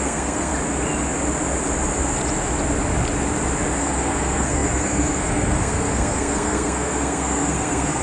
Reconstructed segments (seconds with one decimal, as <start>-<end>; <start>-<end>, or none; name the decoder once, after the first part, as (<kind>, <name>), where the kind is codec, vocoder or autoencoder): 0.0-0.5 (codec, SNAC); 3.8-8.0